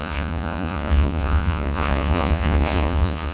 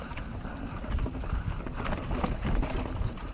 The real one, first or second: second